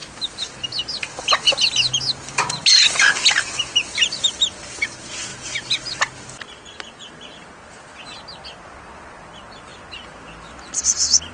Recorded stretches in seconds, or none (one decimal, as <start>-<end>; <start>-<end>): 0.0-11.3